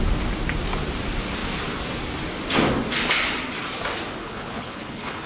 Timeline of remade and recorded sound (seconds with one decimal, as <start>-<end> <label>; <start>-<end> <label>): 0.0-4.2 recorded; 4.2-5.3 remade